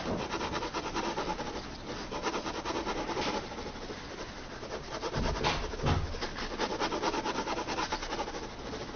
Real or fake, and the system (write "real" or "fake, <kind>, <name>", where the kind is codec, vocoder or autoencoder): real